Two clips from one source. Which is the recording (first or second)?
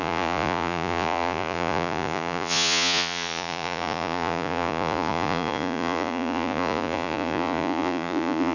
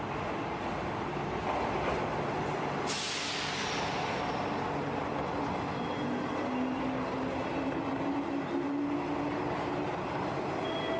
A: second